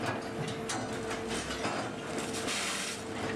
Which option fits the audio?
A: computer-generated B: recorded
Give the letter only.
B